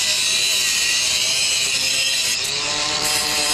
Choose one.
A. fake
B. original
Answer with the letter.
A